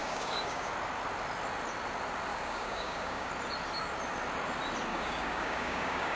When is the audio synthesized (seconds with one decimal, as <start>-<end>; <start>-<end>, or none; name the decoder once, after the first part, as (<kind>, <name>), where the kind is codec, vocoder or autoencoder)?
0.0-0.7 (codec, DAC); 2.3-3.3; 4.9-6.2